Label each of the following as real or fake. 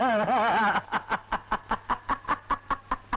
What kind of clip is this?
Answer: real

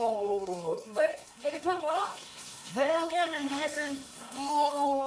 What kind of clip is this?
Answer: fake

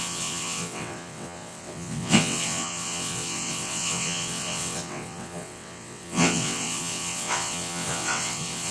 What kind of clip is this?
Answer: fake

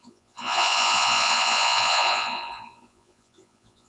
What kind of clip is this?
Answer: fake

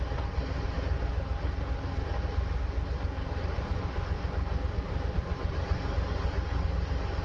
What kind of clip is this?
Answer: real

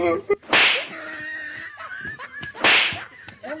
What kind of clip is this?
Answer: real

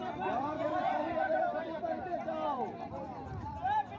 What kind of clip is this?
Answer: fake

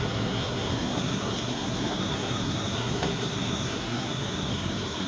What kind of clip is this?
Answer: fake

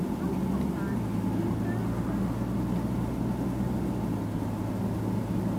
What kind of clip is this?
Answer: real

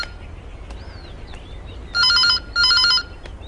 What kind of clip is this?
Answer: real